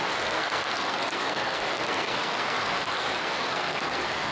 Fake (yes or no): yes